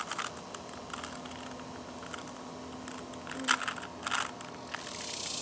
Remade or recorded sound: recorded